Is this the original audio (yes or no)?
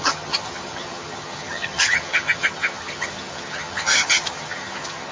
no